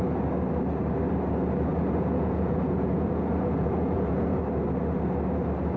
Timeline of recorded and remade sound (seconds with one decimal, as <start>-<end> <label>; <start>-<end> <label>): 0.0-1.7 recorded; 1.7-4.4 remade; 4.4-5.8 recorded

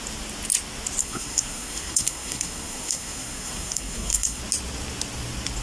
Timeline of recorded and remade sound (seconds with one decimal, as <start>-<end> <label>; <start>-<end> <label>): 0.0-1.0 recorded; 1.0-4.4 remade; 4.4-5.6 recorded

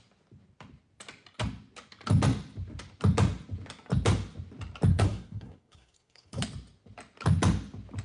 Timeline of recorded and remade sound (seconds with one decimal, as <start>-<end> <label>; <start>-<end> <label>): 0.0-4.9 recorded; 4.9-6.4 remade; 6.4-8.0 recorded

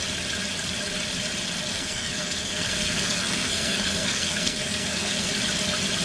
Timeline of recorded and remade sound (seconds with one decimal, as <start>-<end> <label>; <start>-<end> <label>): 0.0-1.7 recorded; 1.7-5.3 remade; 5.3-6.0 recorded

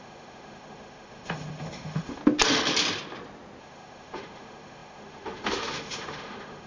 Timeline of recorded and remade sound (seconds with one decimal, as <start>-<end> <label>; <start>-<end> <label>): 0.0-2.2 remade; 2.2-3.6 recorded; 3.6-6.7 remade

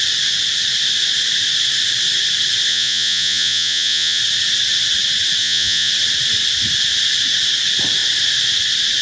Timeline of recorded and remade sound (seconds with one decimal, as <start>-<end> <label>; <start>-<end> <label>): 0.0-2.7 recorded; 2.7-4.2 remade; 4.2-5.4 recorded; 5.4-5.9 remade; 5.9-9.0 recorded